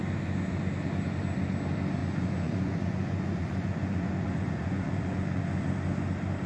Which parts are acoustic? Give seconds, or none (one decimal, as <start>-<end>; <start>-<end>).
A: 0.0-2.0; 5.7-6.5